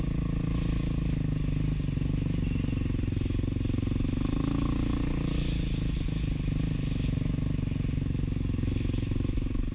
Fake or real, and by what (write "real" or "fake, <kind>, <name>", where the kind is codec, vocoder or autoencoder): real